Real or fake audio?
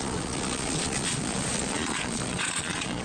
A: fake